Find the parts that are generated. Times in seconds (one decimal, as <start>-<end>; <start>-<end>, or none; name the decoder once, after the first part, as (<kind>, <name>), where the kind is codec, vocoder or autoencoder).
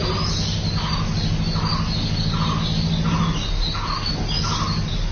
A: none